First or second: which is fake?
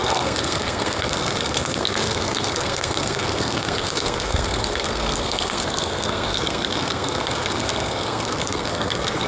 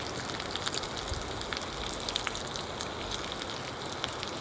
first